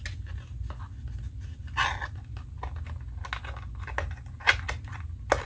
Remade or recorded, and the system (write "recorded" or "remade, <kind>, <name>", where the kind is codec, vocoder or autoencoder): recorded